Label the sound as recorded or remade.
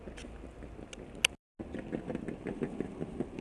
recorded